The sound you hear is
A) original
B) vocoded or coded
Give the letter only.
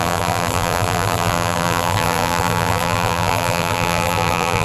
B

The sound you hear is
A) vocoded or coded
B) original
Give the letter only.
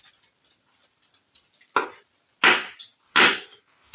B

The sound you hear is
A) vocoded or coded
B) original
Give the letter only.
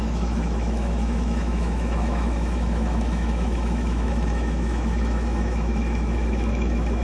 A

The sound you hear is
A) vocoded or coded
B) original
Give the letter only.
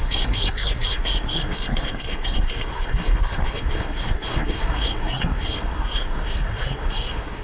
A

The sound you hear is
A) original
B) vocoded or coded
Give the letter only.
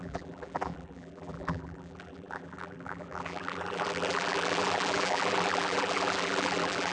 B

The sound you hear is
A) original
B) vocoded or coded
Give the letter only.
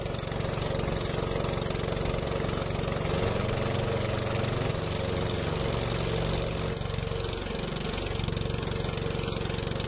A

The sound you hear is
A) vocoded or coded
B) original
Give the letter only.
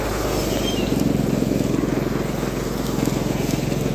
B